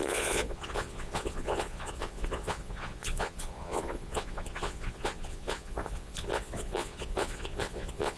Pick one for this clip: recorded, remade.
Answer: remade